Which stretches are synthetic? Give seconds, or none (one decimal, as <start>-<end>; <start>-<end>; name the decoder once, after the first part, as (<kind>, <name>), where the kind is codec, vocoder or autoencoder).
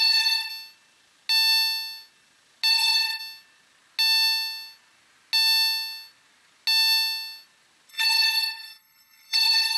0.0-0.5 (codec, HILCodec); 2.7-3.2; 7.9-9.8